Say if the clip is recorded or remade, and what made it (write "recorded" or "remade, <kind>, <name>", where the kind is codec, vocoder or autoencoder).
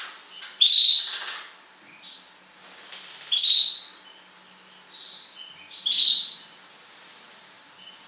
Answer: recorded